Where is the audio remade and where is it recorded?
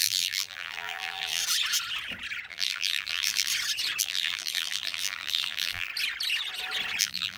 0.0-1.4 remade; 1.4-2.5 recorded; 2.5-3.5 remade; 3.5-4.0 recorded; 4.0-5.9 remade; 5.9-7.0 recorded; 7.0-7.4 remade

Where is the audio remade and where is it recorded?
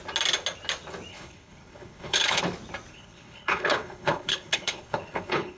0.0-1.1 recorded; 1.1-2.4 remade; 2.4-2.9 recorded; 2.9-5.6 remade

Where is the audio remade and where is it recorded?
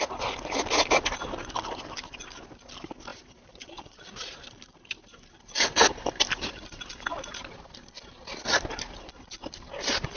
0.0-3.1 recorded; 3.1-7.2 remade; 7.2-10.2 recorded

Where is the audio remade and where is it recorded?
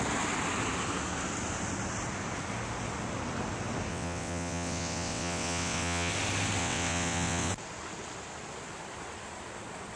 0.0-3.9 recorded; 3.9-6.1 remade; 6.1-6.6 recorded; 6.6-7.5 remade; 7.5-10.0 recorded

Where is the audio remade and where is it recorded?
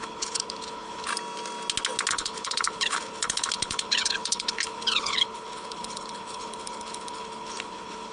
0.0-1.1 remade; 1.1-2.1 recorded; 2.1-8.1 remade